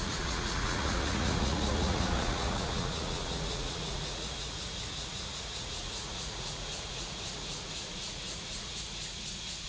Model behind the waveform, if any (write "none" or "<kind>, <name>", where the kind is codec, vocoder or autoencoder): vocoder, Vocos